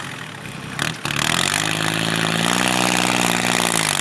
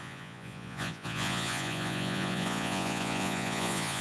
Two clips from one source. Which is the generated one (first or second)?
second